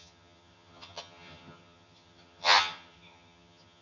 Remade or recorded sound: remade